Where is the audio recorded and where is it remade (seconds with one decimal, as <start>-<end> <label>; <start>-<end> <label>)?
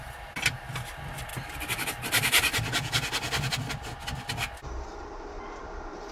0.0-6.1 recorded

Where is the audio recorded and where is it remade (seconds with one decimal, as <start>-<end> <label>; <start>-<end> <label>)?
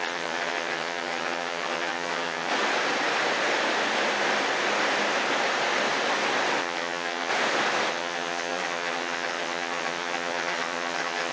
0.0-2.5 remade; 2.5-6.6 recorded; 6.6-7.3 remade; 7.3-7.9 recorded; 7.9-11.3 remade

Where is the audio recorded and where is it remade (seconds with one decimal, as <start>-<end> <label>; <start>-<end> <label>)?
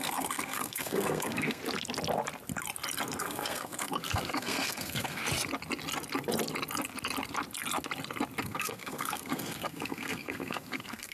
0.0-1.6 remade; 1.6-3.2 recorded; 3.2-5.2 remade; 5.2-8.4 recorded; 8.4-11.1 remade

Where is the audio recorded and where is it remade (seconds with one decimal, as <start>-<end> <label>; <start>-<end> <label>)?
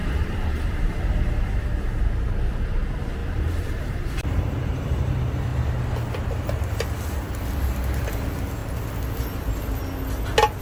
0.0-2.0 remade; 2.0-3.2 recorded; 3.2-5.1 remade; 5.1-10.6 recorded